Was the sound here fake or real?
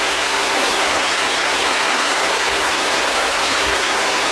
fake